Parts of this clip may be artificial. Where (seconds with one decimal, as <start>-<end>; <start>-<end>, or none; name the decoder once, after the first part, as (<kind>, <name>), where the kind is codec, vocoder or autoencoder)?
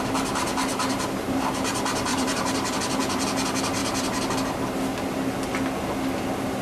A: 0.7-1.7 (vocoder, BigVGAN v2); 2.1-2.8